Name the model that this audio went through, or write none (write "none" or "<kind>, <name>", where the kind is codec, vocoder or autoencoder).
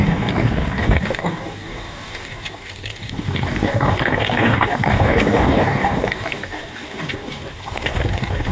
codec, DAC